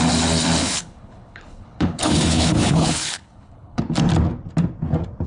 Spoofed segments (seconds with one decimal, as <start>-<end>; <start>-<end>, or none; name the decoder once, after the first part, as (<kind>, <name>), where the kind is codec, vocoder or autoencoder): 0.6-3.8 (codec, HILCodec)